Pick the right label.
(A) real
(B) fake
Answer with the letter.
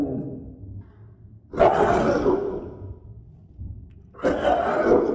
A